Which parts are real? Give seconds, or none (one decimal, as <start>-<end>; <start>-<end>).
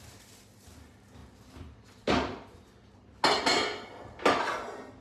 0.0-1.2; 2.6-5.0